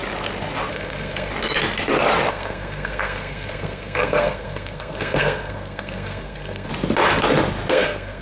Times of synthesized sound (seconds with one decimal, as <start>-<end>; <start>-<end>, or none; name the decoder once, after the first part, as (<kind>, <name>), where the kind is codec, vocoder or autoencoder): 0.7-1.3 (codec, SNAC); 2.3-6.7; 7.7-8.2